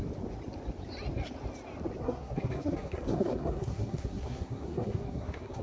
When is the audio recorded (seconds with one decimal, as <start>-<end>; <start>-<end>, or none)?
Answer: 0.0-2.0